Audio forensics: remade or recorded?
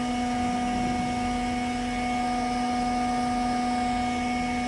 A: recorded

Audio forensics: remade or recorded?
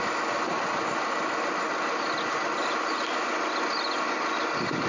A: recorded